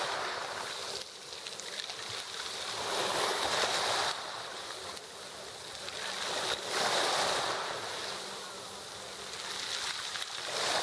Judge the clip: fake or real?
real